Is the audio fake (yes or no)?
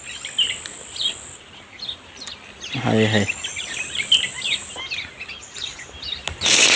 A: no